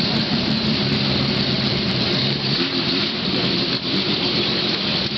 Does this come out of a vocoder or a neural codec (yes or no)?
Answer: yes